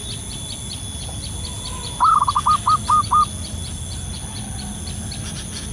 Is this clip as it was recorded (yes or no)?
yes